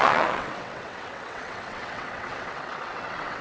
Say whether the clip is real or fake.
fake